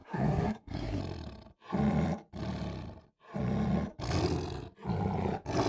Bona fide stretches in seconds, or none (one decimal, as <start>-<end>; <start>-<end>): 1.0-5.7